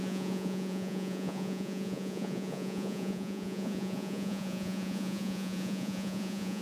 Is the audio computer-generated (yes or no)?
yes